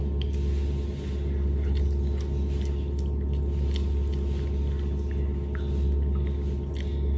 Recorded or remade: recorded